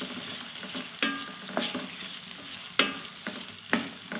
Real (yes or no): yes